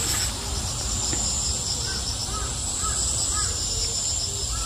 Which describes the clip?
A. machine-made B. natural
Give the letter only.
B